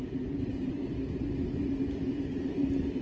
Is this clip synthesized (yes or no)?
yes